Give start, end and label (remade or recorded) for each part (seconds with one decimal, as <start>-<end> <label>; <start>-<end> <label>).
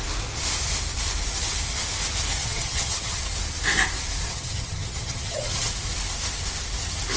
0.0-2.4 recorded; 2.4-3.2 remade; 3.2-4.3 recorded; 4.3-5.7 remade; 5.7-7.2 recorded